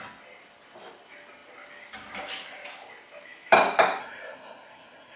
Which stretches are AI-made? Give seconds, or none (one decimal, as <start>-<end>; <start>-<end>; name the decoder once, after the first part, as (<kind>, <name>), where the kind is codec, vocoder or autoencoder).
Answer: 4.0-5.2 (codec, SNAC)